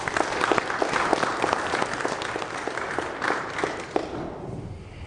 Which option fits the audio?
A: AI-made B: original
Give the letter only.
B